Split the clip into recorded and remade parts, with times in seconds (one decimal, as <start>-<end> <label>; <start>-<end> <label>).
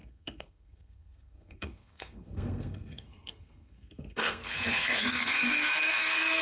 0.0-6.4 remade